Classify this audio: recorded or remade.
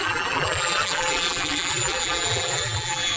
remade